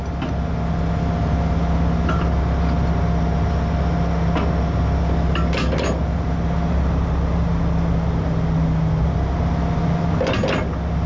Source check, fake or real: real